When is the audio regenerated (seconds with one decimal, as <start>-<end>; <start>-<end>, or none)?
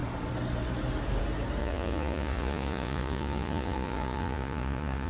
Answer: 1.6-5.1